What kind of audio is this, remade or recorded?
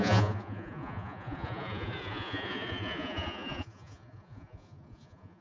remade